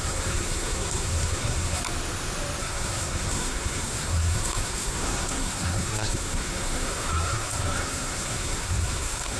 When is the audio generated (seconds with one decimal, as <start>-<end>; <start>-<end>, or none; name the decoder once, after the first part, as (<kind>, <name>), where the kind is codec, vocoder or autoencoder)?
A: 0.0-1.8 (codec, SNAC); 2.6-9.4